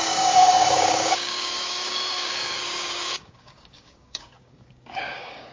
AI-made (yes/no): yes